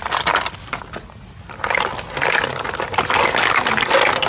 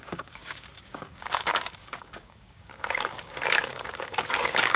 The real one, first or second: first